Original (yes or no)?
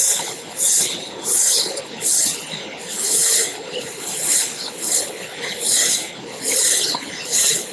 no